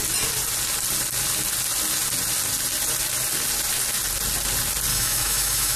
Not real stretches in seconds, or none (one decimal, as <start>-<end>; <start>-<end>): 4.9-5.8